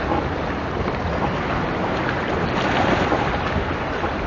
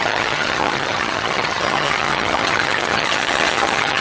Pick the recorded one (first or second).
first